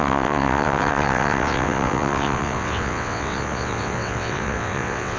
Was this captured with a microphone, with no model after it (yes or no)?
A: no